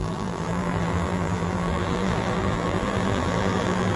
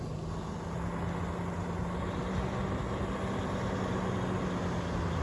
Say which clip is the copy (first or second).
first